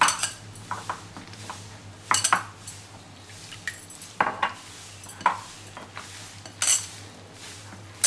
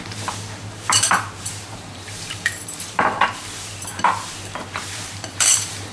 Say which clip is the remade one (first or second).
second